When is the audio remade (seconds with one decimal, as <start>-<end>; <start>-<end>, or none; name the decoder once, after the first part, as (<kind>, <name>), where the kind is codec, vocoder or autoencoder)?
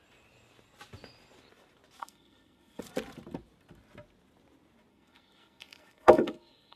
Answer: 2.0-2.8 (codec, SNAC); 4.9-6.8